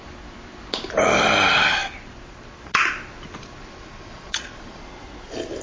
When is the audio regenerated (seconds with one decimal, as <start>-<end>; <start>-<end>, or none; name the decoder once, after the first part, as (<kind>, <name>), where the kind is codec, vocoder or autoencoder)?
3.6-4.8 (vocoder, Vocos)